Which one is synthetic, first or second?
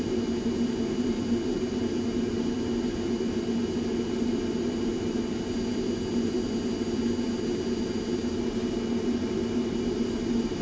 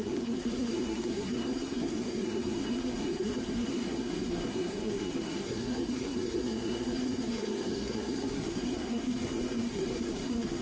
second